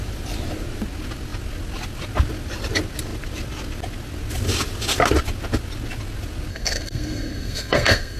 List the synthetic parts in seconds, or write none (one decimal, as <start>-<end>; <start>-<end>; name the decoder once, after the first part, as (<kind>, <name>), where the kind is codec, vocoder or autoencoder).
6.5-8.2 (codec, SNAC)